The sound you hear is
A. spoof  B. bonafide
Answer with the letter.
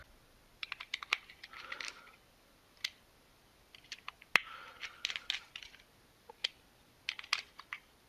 B